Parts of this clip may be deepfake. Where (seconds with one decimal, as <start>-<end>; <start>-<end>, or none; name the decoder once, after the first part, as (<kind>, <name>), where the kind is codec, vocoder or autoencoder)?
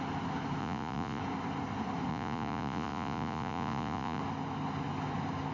0.6-1.2 (vocoder, Vocos); 2.1-4.2